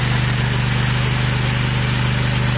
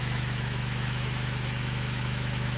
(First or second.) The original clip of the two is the first